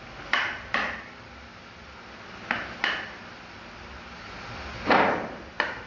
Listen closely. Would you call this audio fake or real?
real